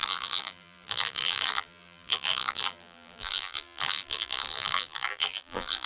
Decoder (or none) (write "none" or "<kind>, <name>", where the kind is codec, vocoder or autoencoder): vocoder, BigVGAN v2